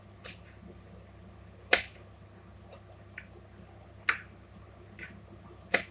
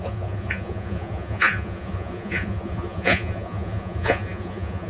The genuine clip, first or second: first